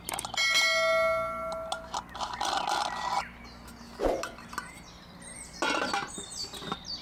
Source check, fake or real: real